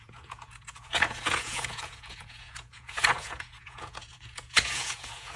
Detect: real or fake fake